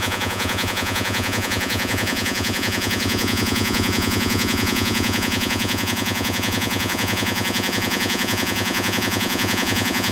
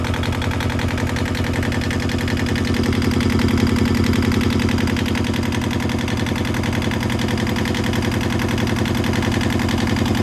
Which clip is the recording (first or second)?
second